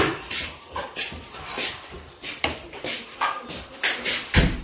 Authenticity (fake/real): fake